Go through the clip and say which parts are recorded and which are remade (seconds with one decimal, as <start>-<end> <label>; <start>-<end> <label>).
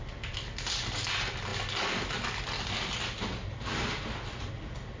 0.0-5.0 recorded